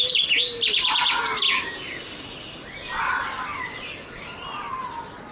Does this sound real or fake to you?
real